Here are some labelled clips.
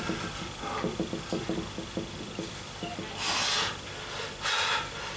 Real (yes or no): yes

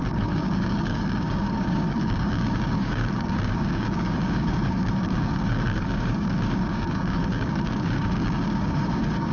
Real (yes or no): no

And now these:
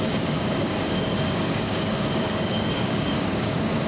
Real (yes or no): no